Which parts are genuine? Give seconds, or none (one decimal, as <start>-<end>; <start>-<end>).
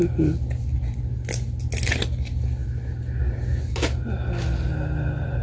0.0-5.4